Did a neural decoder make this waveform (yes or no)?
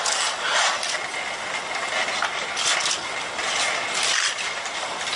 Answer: no